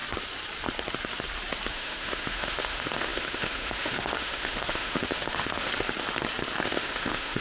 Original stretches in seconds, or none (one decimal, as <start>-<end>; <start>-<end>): 0.0-1.7; 5.7-6.6